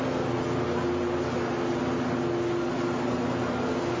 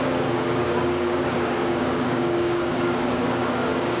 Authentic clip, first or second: first